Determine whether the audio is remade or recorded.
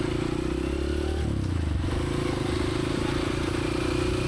recorded